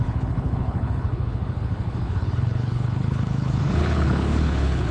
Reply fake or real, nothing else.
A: fake